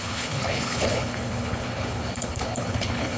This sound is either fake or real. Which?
fake